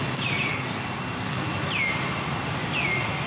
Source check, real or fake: real